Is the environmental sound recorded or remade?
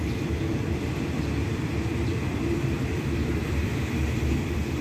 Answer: remade